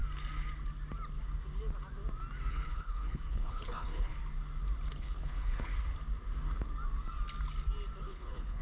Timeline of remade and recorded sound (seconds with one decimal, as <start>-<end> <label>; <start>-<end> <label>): 0.0-2.5 recorded; 2.5-4.1 remade; 4.1-4.9 recorded; 4.9-5.7 remade; 5.7-8.0 recorded; 8.0-8.6 remade